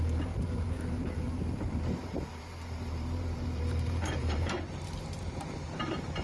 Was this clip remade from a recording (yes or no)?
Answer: yes